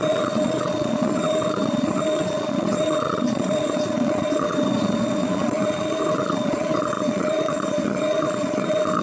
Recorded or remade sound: remade